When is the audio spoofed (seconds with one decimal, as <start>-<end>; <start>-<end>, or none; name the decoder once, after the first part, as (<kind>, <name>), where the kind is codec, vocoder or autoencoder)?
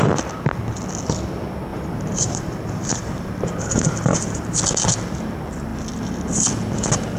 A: 1.7-4.6 (vocoder, BigVGAN v2)